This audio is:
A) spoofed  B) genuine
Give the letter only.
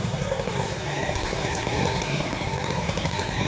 A